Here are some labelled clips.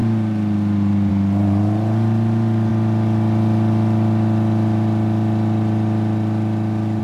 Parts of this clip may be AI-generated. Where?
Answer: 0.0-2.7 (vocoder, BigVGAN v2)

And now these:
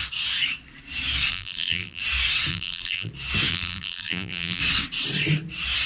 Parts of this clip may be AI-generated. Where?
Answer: 1.3-2.0 (vocoder, BigVGAN v2); 2.5-3.1; 3.5-4.6

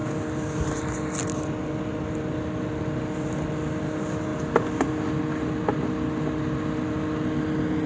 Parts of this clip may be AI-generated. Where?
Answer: 0.0-3.5 (vocoder, BigVGAN v2)

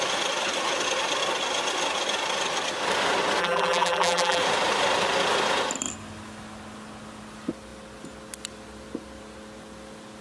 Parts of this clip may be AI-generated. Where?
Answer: 3.4-4.4 (vocoder, BigVGAN v2)

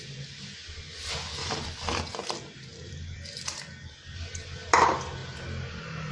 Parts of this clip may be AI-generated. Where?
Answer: 1.4-2.0 (vocoder, BigVGAN v2); 2.7-3.6